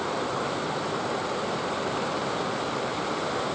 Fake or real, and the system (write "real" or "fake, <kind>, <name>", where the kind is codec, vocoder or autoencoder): real